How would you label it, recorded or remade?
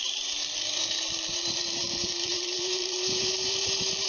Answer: remade